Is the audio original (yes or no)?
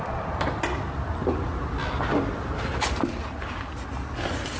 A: yes